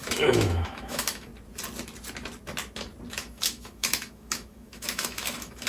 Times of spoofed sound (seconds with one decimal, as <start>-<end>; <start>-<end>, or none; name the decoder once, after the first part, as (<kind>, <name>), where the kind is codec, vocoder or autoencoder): 0.0-1.3 (autoencoder, DAC-VAE); 3.1-5.7